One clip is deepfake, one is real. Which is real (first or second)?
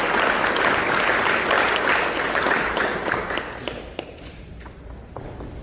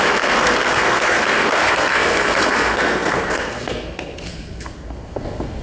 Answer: first